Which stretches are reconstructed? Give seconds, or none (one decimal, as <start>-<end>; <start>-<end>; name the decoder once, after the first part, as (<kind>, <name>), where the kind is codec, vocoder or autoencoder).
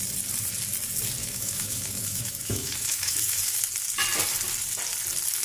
1.2-3.6 (autoencoder, DAC-VAE)